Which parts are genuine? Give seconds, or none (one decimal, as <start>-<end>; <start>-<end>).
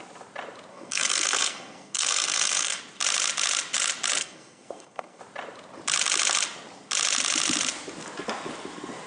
0.0-0.7; 2.8-4.2; 5.2-9.1